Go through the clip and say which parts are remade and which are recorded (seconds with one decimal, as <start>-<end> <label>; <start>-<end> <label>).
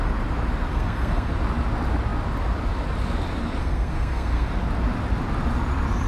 0.0-0.7 recorded; 0.7-1.3 remade; 1.3-3.6 recorded; 3.6-4.5 remade; 4.5-6.1 recorded